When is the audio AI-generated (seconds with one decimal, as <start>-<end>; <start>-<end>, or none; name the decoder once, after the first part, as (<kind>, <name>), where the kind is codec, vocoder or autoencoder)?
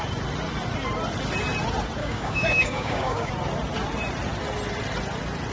2.0-3.3 (codec, DAC)